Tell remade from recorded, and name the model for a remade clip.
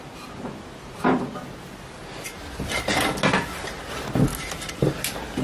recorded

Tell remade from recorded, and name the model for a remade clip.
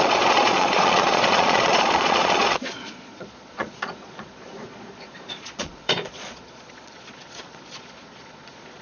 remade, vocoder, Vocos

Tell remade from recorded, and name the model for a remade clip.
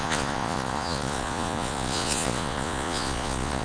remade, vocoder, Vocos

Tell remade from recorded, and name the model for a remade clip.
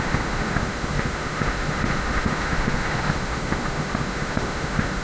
remade, autoencoder, DAC-VAE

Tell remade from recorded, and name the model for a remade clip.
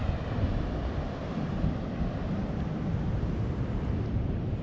recorded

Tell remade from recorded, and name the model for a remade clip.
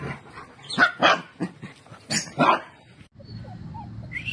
recorded